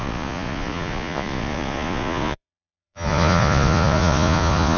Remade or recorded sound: remade